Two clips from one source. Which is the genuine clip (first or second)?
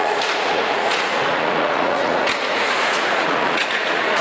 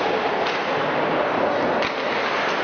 second